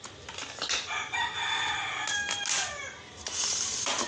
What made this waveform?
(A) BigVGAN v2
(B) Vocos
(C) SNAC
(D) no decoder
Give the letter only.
D